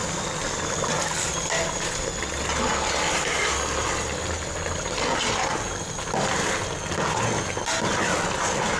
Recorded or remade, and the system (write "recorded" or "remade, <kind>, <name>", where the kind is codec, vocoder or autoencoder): recorded